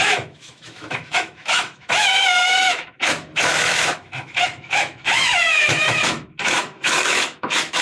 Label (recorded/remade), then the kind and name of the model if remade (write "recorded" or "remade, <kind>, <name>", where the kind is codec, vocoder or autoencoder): remade, autoencoder, DAC-VAE